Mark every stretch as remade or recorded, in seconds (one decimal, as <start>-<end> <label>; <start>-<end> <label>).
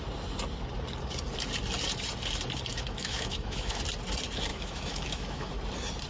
0.0-2.7 recorded; 2.7-3.8 remade; 3.8-4.5 recorded; 4.5-5.5 remade; 5.5-6.1 recorded